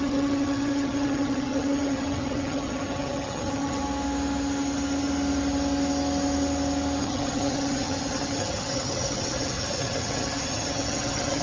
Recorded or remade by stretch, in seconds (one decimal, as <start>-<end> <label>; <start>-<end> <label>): 0.0-3.8 remade; 3.8-7.0 recorded; 7.0-11.4 remade